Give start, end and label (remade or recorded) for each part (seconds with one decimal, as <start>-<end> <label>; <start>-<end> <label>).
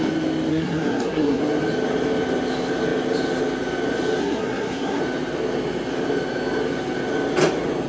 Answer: 0.0-0.5 recorded; 0.5-1.4 remade; 1.4-4.2 recorded; 4.2-5.0 remade; 5.0-7.9 recorded